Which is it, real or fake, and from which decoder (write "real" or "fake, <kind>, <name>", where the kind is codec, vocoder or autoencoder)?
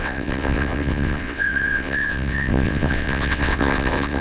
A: fake, vocoder, WaveNeXt